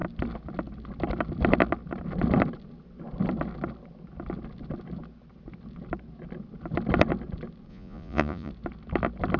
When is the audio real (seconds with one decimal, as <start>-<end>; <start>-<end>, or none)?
0.0-7.7; 8.5-9.4

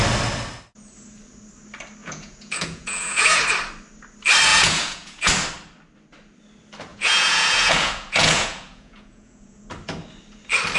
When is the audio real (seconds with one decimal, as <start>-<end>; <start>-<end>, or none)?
0.0-2.0; 3.4-4.5; 5.3-6.9; 9.7-10.8

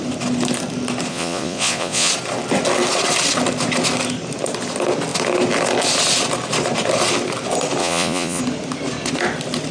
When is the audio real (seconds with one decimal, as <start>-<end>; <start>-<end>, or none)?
0.0-1.1; 2.1-7.8; 8.4-9.7

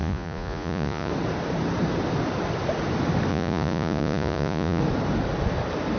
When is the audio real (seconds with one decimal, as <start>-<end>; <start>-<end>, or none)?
1.1-3.3; 4.8-6.0

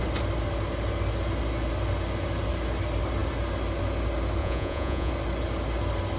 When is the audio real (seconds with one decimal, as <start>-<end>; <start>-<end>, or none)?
0.0-4.4; 5.1-6.2